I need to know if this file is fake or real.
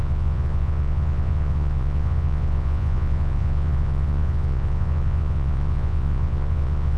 fake